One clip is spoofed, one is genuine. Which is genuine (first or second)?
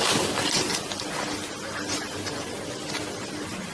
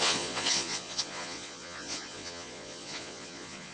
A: first